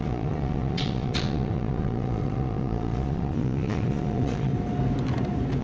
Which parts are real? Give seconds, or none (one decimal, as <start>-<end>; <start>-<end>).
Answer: 4.5-5.6